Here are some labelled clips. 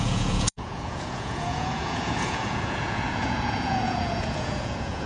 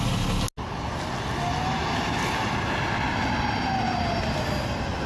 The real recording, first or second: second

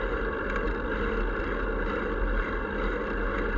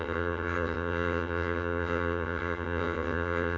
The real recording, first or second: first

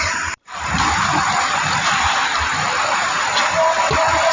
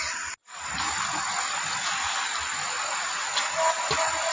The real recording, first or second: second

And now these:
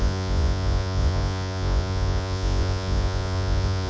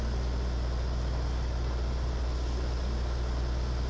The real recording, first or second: second